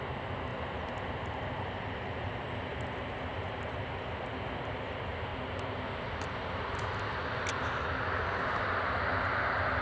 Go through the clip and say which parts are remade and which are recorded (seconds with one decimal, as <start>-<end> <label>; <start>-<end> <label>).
0.0-0.5 recorded; 0.5-2.3 remade; 2.3-9.8 recorded